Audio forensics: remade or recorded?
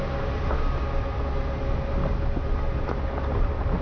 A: recorded